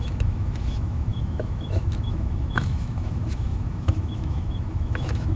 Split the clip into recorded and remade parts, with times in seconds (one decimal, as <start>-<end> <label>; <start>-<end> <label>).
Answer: 0.0-5.4 remade